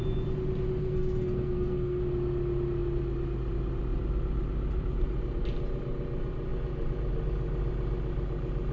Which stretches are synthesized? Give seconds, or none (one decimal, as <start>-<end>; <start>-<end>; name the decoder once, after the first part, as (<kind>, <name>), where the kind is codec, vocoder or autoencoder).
0.8-2.0 (codec, SNAC)